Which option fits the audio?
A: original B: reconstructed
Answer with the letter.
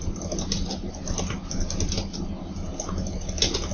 A